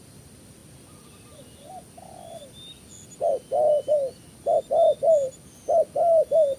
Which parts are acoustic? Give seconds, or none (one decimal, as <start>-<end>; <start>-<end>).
0.0-6.6